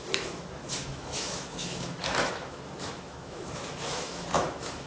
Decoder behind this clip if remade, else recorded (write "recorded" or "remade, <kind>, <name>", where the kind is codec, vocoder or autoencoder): remade, autoencoder, DAC-VAE